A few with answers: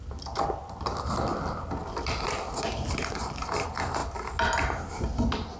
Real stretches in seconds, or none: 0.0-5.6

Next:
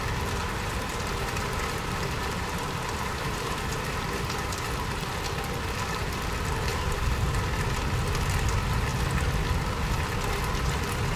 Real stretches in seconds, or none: 0.0-0.4; 5.1-6.7; 7.4-11.2